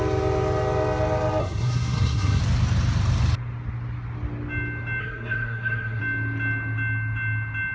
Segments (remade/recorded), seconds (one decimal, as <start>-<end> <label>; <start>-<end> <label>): 0.0-1.4 recorded; 1.4-2.4 remade; 2.4-5.0 recorded; 5.0-6.0 remade; 6.0-7.7 recorded